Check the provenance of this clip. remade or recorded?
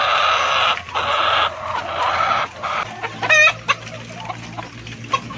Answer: recorded